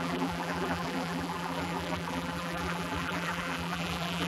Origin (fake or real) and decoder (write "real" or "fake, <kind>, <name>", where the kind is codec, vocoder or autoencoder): fake, vocoder, BigVGAN v2